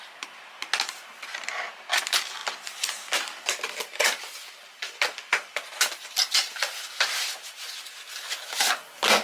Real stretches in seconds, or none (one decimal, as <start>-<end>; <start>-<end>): 0.0-9.2